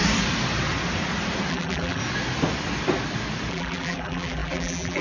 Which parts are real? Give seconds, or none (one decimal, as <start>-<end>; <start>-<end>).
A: 0.0-1.5; 2.0-3.5